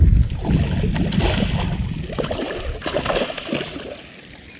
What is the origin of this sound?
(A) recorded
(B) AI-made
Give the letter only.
A